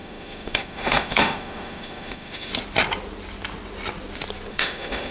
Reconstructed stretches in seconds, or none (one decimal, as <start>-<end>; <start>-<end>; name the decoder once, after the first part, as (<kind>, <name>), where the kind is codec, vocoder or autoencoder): 0.0-2.5 (autoencoder, DAC-VAE); 4.5-5.1